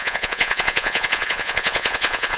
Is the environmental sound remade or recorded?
remade